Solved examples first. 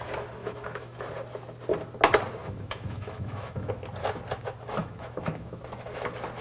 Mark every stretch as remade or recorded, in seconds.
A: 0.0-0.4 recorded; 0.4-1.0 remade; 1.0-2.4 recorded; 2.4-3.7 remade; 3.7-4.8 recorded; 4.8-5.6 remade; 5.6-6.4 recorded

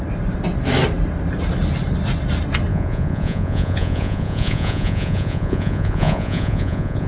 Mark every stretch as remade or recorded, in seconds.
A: 0.0-2.7 recorded; 2.7-7.1 remade

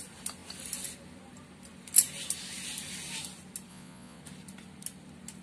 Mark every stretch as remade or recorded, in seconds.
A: 0.0-3.7 recorded; 3.7-4.2 remade; 4.2-5.4 recorded

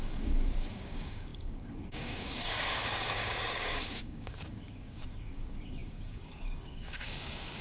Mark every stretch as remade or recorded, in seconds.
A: 0.0-7.6 remade

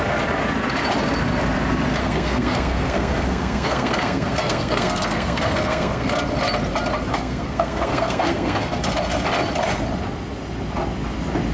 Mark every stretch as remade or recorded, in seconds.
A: 0.0-2.0 recorded; 2.0-6.1 remade; 6.1-7.1 recorded; 7.1-8.8 remade; 8.8-11.5 recorded

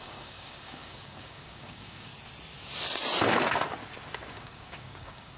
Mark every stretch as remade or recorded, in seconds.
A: 0.0-2.1 remade; 2.1-4.3 recorded; 4.3-5.4 remade

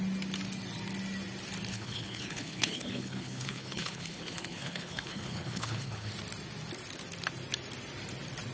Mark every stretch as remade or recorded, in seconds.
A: 0.0-1.7 recorded; 1.7-6.1 remade; 6.1-8.5 recorded